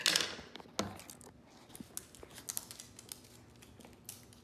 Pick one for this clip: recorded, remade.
recorded